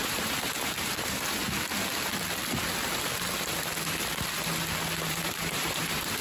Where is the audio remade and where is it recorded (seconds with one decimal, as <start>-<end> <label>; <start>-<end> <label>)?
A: 0.0-1.4 remade; 1.4-5.1 recorded; 5.1-6.2 remade

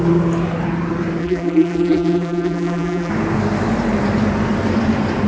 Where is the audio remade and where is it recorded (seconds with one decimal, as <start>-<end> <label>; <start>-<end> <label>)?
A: 0.0-1.2 recorded; 1.2-3.1 remade; 3.1-5.3 recorded

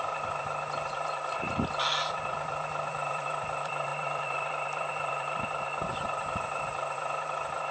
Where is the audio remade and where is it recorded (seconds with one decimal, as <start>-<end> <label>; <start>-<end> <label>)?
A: 0.0-7.7 remade

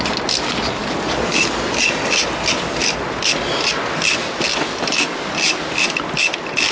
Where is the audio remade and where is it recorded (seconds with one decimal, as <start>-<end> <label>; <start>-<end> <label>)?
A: 0.0-0.8 recorded; 0.8-1.3 remade; 1.3-2.8 recorded; 2.8-3.4 remade; 3.4-4.5 recorded; 4.5-5.2 remade; 5.2-6.7 recorded

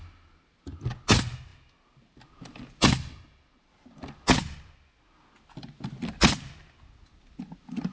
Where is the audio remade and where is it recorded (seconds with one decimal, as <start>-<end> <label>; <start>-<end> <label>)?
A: 0.0-7.9 recorded

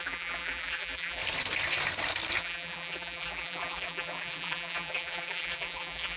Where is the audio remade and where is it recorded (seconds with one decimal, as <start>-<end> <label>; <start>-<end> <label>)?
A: 0.0-1.2 remade; 1.2-2.4 recorded; 2.4-6.2 remade